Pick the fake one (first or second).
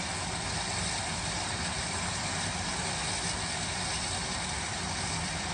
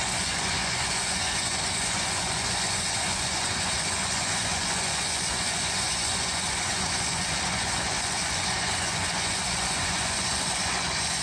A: second